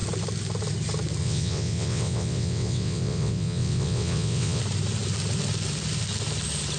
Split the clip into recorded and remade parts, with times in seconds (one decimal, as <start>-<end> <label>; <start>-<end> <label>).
0.0-1.2 recorded; 1.2-4.6 remade; 4.6-6.8 recorded